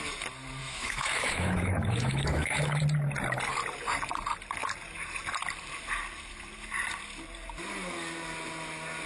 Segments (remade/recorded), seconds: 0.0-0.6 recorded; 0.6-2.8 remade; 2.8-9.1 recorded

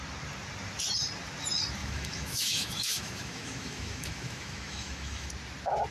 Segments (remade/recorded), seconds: 0.0-1.8 recorded; 1.8-5.3 remade; 5.3-5.9 recorded

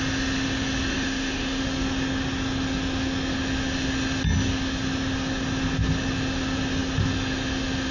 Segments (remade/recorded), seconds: 0.0-0.9 recorded; 0.9-1.6 remade; 1.6-7.9 recorded

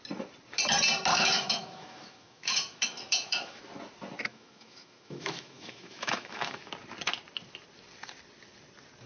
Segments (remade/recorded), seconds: 0.0-1.1 recorded; 1.1-3.6 remade; 3.6-4.3 recorded; 4.3-6.7 remade; 6.7-9.1 recorded

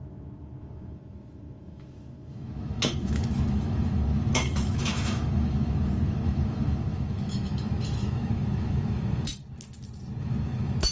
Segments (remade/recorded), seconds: 0.0-9.4 remade; 9.4-10.2 recorded; 10.2-10.9 remade

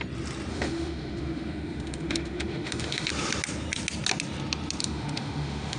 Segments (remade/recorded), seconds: 0.0-0.5 recorded; 0.5-3.1 remade; 3.1-4.8 recorded; 4.8-5.8 remade